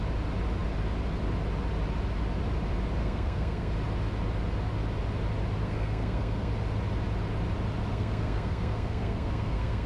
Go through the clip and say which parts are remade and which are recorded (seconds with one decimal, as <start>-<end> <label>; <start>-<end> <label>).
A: 0.0-3.0 recorded; 3.0-3.7 remade; 3.7-5.6 recorded; 5.6-6.5 remade; 6.5-7.9 recorded; 7.9-9.9 remade